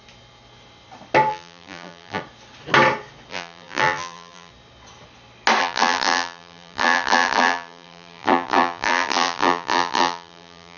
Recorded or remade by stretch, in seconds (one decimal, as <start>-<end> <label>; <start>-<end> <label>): 0.0-1.3 recorded; 1.3-2.2 remade; 2.2-3.3 recorded; 3.3-4.5 remade; 4.5-5.6 recorded; 5.6-10.8 remade